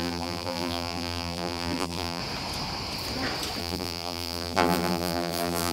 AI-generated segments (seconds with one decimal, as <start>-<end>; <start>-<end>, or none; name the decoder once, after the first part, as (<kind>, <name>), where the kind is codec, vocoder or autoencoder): 0.0-2.2 (vocoder, BigVGAN v2); 3.6-5.7